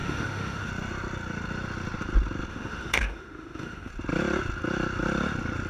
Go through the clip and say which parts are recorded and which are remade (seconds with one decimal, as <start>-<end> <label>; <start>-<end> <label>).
0.0-0.7 remade; 0.7-2.5 recorded; 2.5-3.9 remade; 3.9-5.7 recorded